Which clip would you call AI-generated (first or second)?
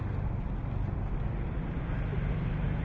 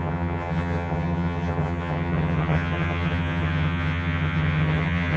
second